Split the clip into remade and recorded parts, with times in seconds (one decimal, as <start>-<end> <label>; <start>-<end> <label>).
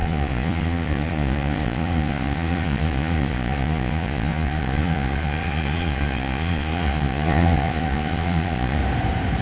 0.0-8.8 remade; 8.8-9.4 recorded